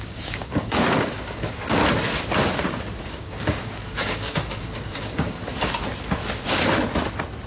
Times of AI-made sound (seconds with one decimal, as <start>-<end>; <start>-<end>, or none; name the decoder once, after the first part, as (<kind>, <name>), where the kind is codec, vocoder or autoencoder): 0.0-1.8 (codec, DAC); 3.0-5.4